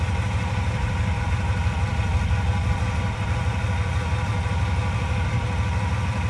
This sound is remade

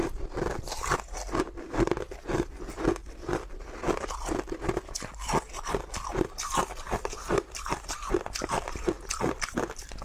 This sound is remade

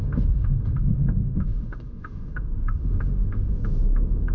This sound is remade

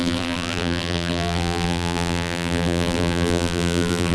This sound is remade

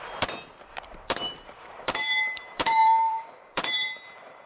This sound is remade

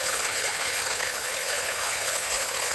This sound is remade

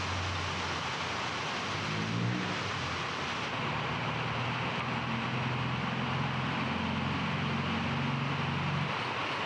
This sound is recorded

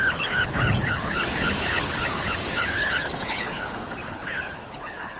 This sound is remade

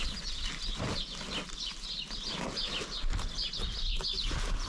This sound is recorded